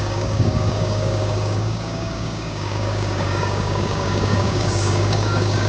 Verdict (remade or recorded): remade